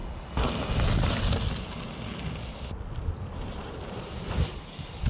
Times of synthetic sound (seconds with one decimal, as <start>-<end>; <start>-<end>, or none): 3.1-5.1